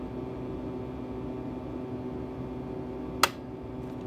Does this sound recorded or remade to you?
recorded